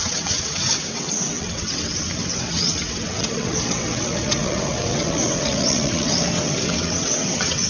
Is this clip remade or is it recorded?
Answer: remade